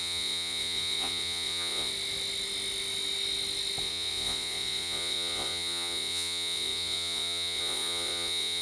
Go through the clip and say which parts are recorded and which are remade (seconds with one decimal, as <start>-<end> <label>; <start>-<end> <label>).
0.0-1.9 remade; 1.9-3.8 recorded; 3.8-8.6 remade